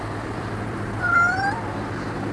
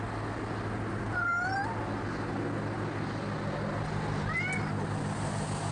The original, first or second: second